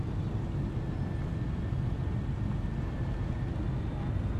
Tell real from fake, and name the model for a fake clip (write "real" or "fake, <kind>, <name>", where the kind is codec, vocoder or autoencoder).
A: real